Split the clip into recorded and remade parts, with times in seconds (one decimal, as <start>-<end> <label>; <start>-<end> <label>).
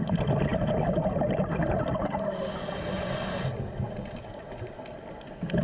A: 0.0-5.6 recorded